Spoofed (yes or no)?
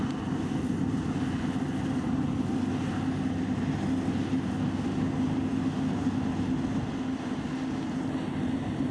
no